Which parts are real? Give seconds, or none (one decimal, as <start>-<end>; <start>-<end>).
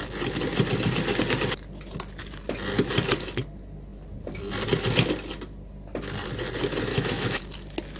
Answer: 0.0-6.9; 7.4-8.0